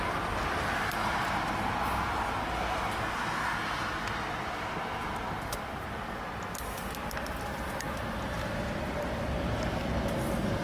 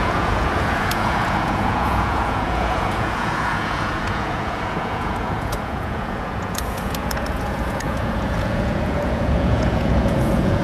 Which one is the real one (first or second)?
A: first